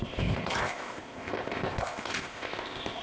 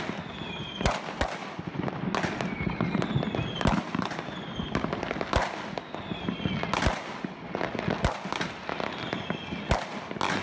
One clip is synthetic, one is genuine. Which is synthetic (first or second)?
first